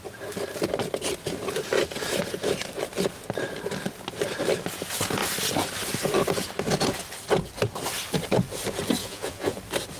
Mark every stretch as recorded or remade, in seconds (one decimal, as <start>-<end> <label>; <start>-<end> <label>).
0.0-9.0 recorded; 9.0-9.6 remade; 9.6-10.0 recorded